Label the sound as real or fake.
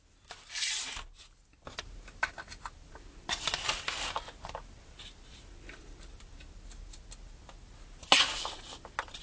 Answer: real